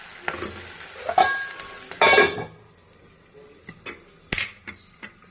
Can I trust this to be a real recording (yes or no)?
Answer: yes